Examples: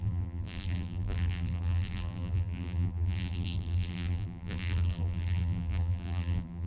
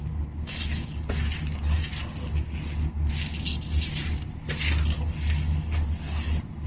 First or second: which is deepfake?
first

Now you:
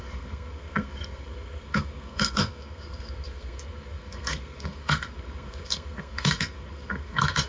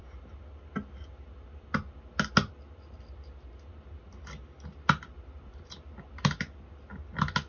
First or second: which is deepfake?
first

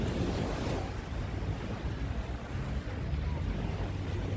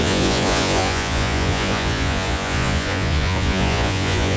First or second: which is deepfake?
second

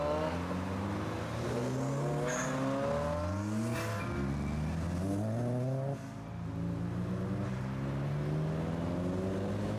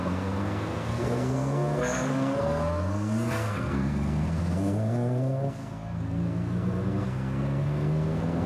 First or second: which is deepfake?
second